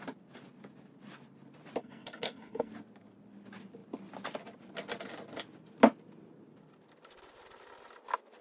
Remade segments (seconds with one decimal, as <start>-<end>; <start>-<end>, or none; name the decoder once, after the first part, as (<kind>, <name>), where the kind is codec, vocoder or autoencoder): 1.8-2.7 (codec, SNAC)